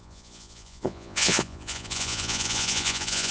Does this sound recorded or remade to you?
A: remade